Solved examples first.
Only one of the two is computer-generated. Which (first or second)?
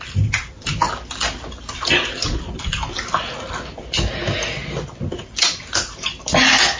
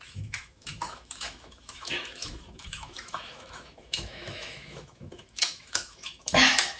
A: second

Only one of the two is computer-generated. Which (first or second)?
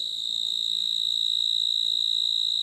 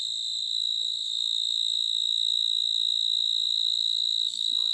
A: second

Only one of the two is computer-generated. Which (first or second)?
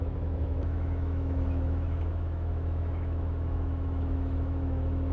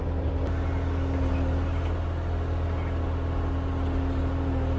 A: first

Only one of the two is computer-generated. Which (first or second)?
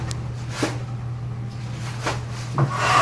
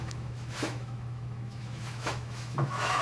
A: second